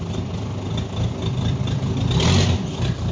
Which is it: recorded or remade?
recorded